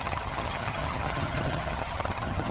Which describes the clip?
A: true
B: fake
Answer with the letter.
B